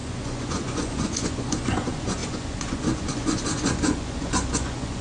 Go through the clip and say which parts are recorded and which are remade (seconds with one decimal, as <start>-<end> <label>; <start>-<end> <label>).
0.0-5.0 remade